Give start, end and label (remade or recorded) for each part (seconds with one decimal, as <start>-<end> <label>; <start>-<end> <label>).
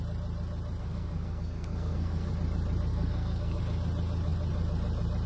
0.0-0.8 recorded; 0.8-2.3 remade; 2.3-2.9 recorded; 2.9-3.6 remade; 3.6-5.3 recorded